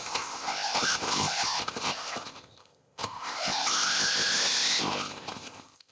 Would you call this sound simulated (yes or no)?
yes